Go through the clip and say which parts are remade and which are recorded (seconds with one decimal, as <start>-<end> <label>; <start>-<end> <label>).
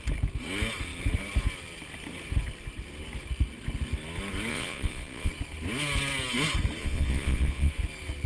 0.0-4.5 recorded; 4.5-5.3 remade; 5.3-6.8 recorded; 6.8-7.7 remade; 7.7-8.3 recorded